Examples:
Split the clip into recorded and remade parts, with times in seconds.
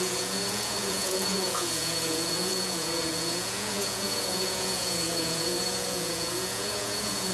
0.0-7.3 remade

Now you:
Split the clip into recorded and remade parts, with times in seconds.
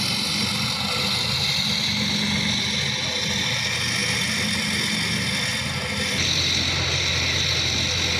0.0-8.2 recorded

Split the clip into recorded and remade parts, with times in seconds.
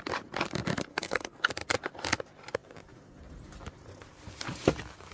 0.0-0.9 recorded; 0.9-1.5 remade; 1.5-5.1 recorded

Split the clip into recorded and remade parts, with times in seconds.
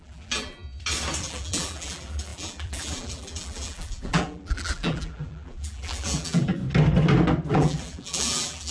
0.0-0.6 remade; 0.6-1.2 recorded; 1.2-6.6 remade; 6.6-7.5 recorded; 7.5-8.7 remade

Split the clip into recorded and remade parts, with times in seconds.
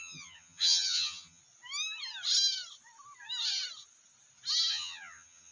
0.0-1.4 remade; 1.4-4.7 recorded; 4.7-5.5 remade